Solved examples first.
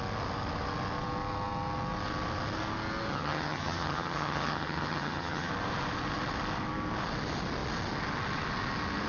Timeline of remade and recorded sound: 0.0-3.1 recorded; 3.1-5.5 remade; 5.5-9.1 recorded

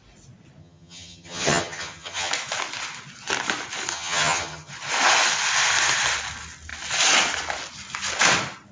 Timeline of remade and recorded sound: 0.0-0.6 recorded; 0.6-2.3 remade; 2.3-3.9 recorded; 3.9-4.7 remade; 4.7-8.7 recorded

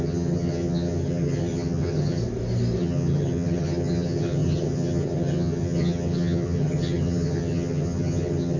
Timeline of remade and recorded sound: 0.0-2.2 remade; 2.2-2.8 recorded; 2.8-8.6 remade

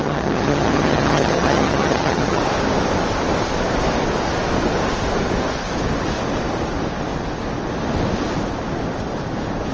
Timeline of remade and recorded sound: 0.0-2.4 remade; 2.4-9.7 recorded